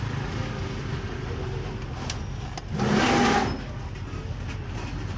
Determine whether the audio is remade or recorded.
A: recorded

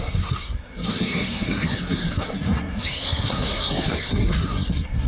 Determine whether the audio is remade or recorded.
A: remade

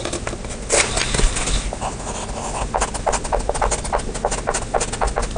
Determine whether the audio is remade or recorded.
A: recorded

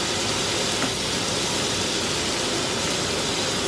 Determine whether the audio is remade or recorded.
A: recorded